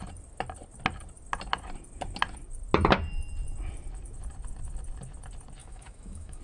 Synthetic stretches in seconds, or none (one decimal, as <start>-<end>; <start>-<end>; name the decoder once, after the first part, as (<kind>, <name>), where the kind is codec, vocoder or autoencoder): 5.6-6.4 (autoencoder, DAC-VAE)